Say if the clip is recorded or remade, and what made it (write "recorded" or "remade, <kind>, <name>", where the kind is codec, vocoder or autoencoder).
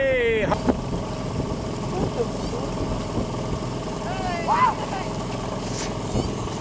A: recorded